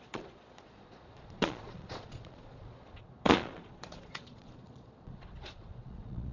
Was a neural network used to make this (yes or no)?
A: yes